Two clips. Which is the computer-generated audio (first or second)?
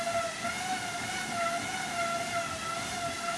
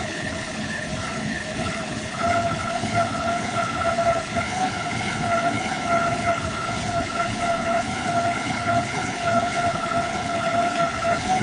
second